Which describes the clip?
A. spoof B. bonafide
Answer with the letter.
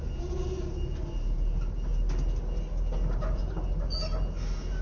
B